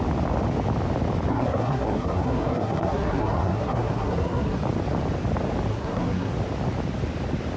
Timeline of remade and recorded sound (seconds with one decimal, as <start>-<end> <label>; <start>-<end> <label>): 0.0-1.3 recorded; 1.3-4.6 remade; 4.6-5.7 recorded; 5.7-6.3 remade; 6.3-7.6 recorded